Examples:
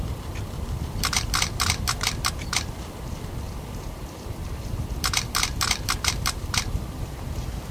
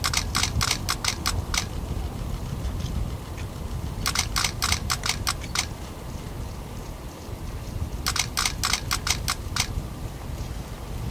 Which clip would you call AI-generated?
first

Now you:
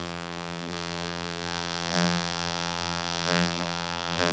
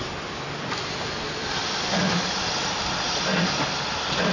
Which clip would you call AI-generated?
first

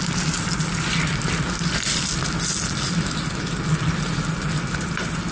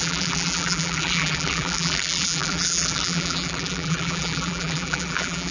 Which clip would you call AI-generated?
second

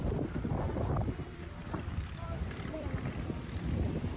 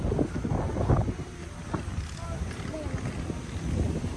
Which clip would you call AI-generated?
first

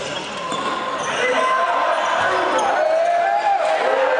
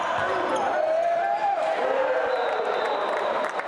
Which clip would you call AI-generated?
second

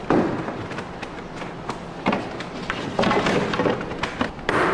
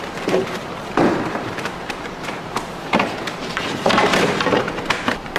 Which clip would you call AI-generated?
second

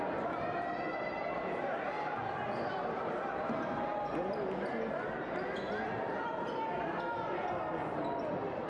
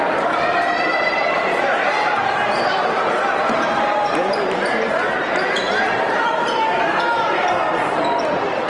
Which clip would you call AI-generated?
second